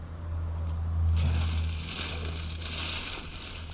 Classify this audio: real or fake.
real